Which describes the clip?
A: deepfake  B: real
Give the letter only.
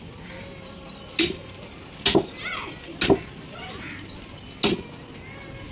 B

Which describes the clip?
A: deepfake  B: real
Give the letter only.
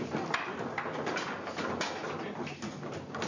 B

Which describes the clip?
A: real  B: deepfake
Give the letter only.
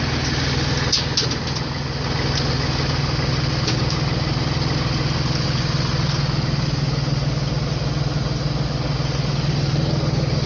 A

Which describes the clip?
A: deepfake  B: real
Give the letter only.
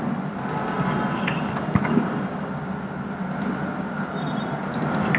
B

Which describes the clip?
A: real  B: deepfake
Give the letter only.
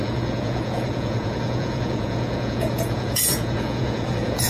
B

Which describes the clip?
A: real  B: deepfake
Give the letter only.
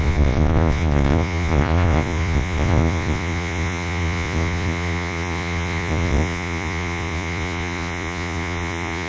B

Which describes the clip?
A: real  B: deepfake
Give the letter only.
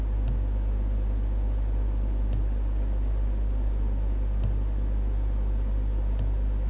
A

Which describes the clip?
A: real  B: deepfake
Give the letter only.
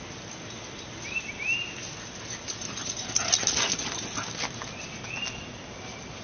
A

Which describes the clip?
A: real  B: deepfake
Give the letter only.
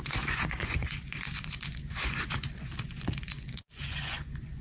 B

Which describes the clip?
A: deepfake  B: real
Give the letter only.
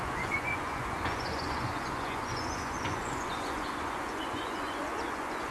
A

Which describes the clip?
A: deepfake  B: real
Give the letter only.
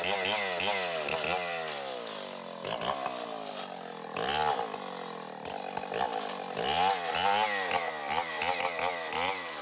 B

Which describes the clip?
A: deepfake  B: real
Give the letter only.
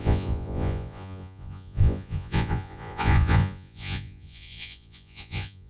A